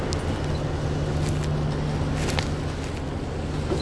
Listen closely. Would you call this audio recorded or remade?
recorded